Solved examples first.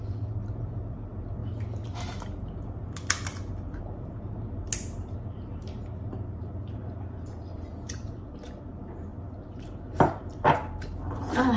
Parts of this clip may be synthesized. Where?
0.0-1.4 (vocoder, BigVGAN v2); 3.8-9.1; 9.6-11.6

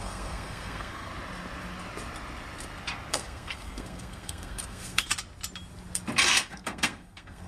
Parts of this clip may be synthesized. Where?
0.0-1.1 (codec, SNAC); 3.1-5.1; 6.3-7.5

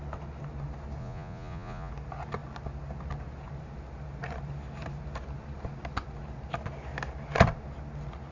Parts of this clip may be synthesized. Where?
1.0-1.9 (vocoder, Vocos)

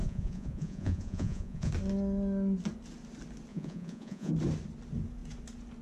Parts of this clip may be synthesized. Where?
0.0-1.7 (vocoder, Vocos); 3.5-4.3

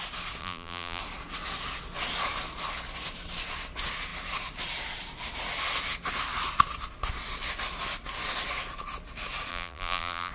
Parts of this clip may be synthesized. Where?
0.4-1.0 (vocoder, BigVGAN v2); 9.5-10.3

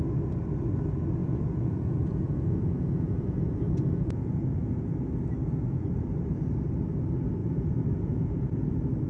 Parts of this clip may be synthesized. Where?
1.2-4.9 (vocoder, Vocos); 5.4-5.9; 7.4-8.7

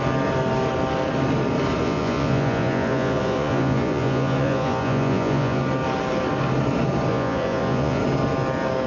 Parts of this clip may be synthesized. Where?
1.8-5.6 (vocoder, Vocos); 7.1-8.0

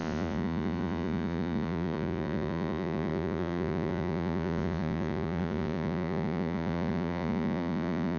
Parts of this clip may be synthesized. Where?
0.0-8.2 (vocoder, Vocos)